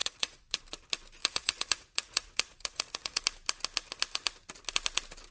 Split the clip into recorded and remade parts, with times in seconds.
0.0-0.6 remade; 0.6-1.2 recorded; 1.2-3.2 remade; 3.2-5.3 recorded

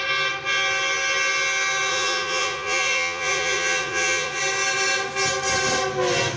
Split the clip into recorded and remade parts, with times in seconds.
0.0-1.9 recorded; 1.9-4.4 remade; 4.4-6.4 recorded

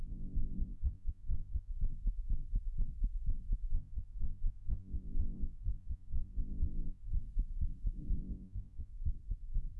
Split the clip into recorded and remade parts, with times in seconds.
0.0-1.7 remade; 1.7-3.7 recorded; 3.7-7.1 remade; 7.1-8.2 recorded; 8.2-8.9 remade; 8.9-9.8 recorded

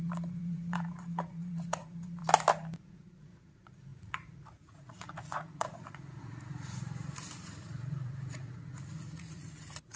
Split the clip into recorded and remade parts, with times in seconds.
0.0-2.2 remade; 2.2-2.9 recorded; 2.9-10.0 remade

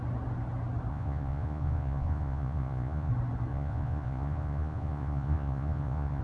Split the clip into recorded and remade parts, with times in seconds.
0.0-0.9 recorded; 0.9-3.1 remade; 3.1-3.5 recorded; 3.5-6.2 remade